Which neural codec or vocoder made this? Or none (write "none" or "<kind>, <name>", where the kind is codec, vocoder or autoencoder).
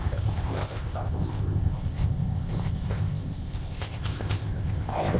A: codec, ZipCodec